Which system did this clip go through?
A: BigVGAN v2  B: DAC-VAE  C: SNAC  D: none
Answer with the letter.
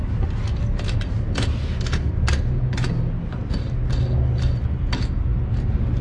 D